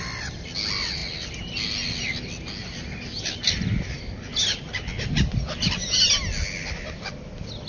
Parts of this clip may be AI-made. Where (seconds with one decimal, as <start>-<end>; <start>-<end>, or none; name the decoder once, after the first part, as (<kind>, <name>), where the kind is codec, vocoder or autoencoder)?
none